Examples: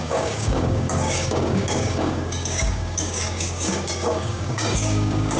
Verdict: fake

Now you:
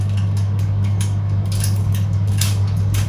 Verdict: fake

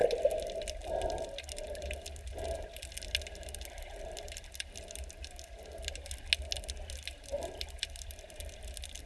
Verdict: real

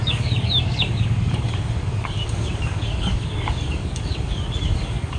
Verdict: fake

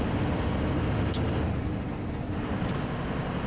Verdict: real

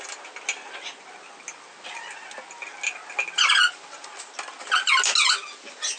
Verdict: real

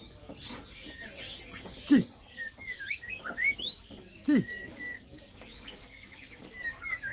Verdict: fake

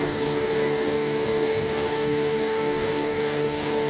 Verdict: fake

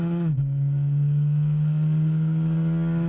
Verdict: fake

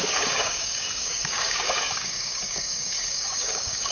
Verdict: fake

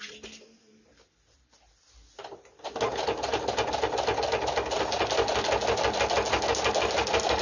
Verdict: real